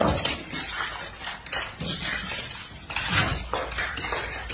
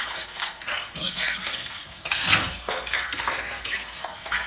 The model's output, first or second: second